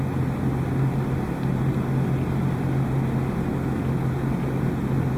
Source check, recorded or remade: recorded